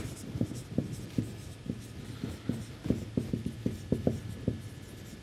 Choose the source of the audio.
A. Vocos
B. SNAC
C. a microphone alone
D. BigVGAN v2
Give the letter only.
C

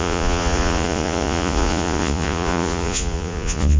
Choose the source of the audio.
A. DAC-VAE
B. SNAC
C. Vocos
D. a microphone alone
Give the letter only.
C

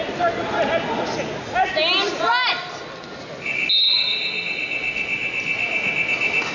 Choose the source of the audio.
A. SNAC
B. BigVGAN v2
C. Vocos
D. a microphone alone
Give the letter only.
D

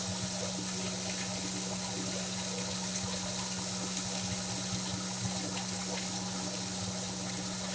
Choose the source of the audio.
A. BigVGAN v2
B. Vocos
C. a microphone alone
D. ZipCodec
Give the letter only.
C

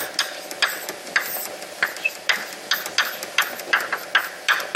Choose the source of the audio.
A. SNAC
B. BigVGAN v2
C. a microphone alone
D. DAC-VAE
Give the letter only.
C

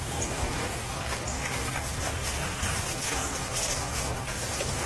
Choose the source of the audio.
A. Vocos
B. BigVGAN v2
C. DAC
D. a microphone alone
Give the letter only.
C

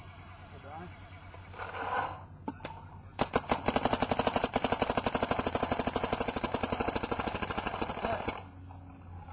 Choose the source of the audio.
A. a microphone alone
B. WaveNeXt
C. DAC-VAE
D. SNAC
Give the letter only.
A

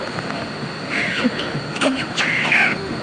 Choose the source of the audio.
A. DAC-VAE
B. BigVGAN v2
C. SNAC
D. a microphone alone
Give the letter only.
A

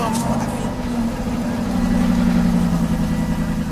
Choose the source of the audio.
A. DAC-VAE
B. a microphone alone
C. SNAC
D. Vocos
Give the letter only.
B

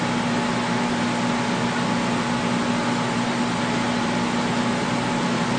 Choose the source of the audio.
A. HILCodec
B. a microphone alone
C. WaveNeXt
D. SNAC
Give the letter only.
B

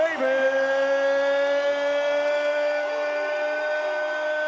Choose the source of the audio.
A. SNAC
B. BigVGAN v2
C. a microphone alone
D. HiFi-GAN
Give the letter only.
C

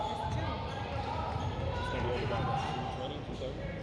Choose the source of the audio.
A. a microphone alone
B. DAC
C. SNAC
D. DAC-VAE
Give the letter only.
A